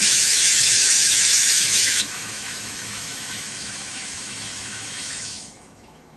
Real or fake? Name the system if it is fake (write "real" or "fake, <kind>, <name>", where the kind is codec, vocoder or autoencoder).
fake, autoencoder, DAC-VAE